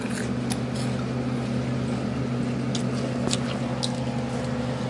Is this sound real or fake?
real